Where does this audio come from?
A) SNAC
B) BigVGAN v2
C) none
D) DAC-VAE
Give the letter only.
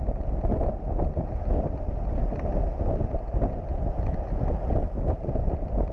C